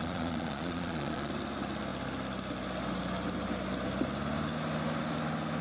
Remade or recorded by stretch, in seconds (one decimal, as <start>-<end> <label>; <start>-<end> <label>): 0.0-1.3 remade; 1.3-5.6 recorded